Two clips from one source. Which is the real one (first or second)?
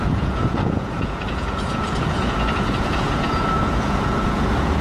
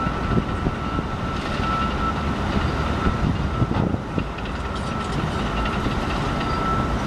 second